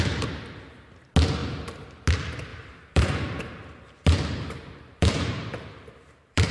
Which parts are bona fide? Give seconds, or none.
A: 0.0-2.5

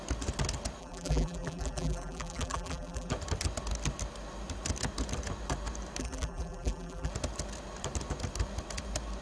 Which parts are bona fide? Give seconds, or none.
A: 0.0-0.8; 3.1-6.0; 7.1-9.2

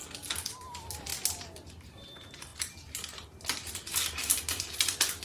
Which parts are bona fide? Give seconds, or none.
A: 0.0-0.5; 1.1-1.7; 2.5-5.2